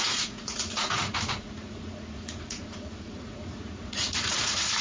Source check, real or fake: fake